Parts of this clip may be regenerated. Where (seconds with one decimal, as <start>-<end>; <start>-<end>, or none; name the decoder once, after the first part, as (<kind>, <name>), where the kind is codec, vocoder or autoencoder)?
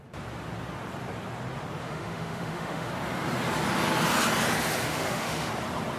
1.8-2.9 (autoencoder, DAC-VAE); 4.8-5.5